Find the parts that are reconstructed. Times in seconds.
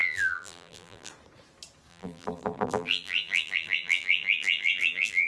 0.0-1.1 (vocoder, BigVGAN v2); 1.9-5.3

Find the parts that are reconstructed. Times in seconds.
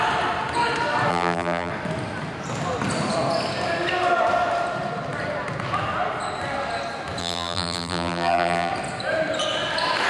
1.1-1.7 (vocoder, BigVGAN v2); 7.2-8.7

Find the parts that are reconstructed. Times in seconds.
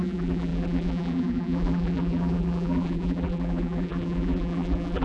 0.0-5.0 (vocoder, BigVGAN v2)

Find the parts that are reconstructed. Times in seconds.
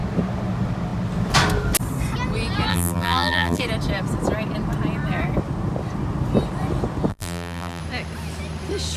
2.7-3.6 (vocoder, BigVGAN v2); 7.1-7.8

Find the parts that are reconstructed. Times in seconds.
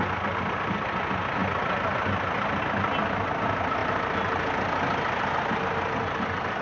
none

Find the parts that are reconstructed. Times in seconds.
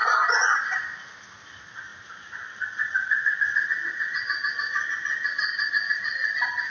0.0-1.9 (vocoder, BigVGAN v2); 5.9-6.7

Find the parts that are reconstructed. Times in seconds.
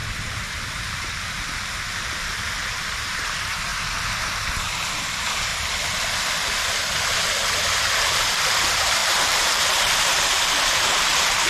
0.6-3.7 (vocoder, BigVGAN v2); 4.9-5.5; 8.1-11.5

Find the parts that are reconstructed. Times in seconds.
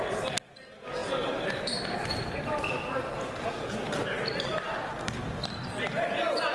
1.0-4.9 (vocoder, BigVGAN v2)